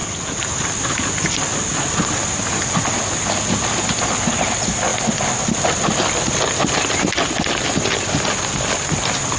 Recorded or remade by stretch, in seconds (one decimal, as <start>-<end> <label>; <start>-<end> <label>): 0.0-9.4 recorded